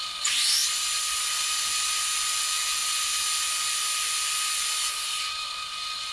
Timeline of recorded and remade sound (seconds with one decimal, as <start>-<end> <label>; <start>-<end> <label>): 0.0-6.1 recorded